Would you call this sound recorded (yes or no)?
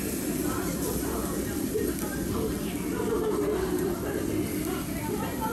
yes